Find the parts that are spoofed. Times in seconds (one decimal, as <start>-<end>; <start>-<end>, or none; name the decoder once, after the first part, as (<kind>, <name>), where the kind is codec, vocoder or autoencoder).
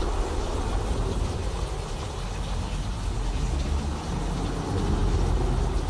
none